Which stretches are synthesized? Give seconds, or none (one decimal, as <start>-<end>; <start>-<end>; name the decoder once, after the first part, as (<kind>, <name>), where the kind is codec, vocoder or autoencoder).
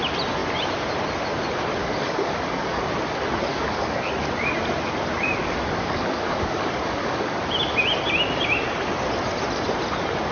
1.8-2.8 (codec, DAC); 3.5-4.1; 5.4-7.4